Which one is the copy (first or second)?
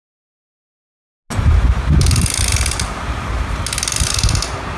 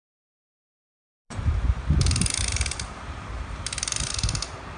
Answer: second